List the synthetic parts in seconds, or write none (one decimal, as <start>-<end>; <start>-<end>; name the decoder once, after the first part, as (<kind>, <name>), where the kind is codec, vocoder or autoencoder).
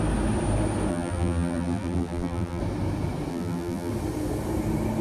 0.9-2.6 (vocoder, BigVGAN v2); 3.3-3.9